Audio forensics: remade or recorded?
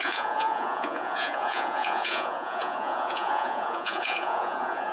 remade